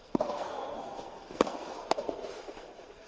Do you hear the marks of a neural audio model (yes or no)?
yes